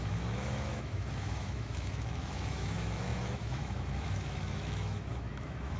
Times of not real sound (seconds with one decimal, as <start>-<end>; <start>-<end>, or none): 0.0-5.8